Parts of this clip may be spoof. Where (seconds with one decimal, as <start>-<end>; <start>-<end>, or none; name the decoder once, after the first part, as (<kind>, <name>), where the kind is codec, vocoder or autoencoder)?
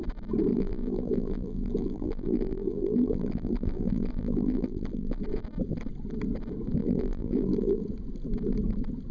0.5-5.2 (vocoder, BigVGAN v2); 6.8-7.8